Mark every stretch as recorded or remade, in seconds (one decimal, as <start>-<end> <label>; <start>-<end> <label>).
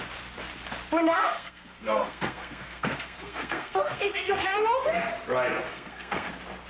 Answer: 0.0-1.1 recorded; 1.1-5.1 remade; 5.1-5.7 recorded; 5.7-6.3 remade; 6.3-6.7 recorded